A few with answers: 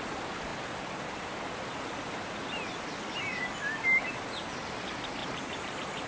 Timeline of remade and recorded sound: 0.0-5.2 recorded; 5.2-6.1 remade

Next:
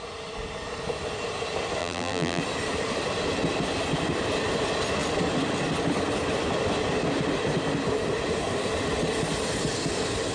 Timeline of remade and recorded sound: 0.0-1.8 recorded; 1.8-2.4 remade; 2.4-10.3 recorded

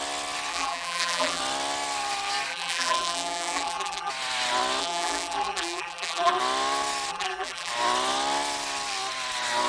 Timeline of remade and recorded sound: 0.0-0.5 recorded; 0.5-1.4 remade; 1.4-2.5 recorded; 2.5-4.1 remade; 4.1-4.8 recorded; 4.8-6.4 remade; 6.4-7.1 recorded; 7.1-7.7 remade; 7.7-9.7 recorded

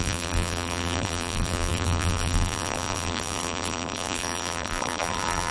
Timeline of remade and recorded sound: 0.0-5.5 remade